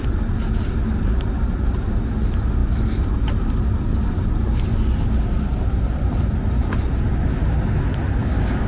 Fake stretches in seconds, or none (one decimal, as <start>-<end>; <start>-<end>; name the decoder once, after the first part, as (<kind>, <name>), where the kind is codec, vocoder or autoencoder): 8.2-8.7 (codec, DAC)